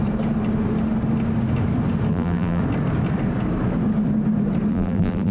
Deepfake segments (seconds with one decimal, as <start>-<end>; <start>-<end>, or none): 2.1-2.6; 4.7-5.3